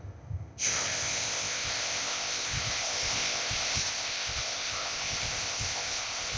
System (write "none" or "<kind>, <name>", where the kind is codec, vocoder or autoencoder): codec, ZipCodec